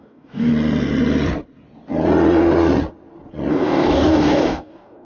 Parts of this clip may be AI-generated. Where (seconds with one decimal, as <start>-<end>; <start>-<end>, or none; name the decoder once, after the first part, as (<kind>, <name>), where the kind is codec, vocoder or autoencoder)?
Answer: 0.0-0.5 (codec, DAC); 3.5-5.0